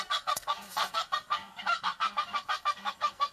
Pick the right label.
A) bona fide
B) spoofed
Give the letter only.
B